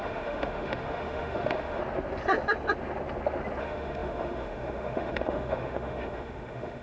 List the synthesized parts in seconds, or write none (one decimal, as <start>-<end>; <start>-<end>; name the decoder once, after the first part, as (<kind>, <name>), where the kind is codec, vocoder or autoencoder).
0.0-1.8 (autoencoder, DAC-VAE); 3.6-6.8